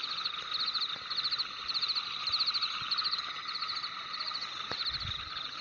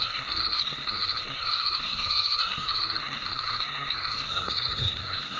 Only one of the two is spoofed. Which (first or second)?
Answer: second